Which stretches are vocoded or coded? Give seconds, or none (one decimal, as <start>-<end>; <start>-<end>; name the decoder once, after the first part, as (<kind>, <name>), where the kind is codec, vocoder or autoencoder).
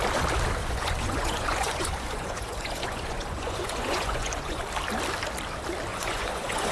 0.6-4.6 (vocoder, Vocos); 5.9-6.7